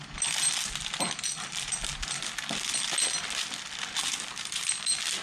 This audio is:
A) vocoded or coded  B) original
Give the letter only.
B